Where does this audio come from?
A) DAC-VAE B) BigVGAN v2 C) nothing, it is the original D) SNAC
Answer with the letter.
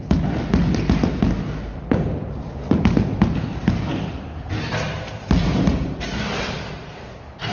C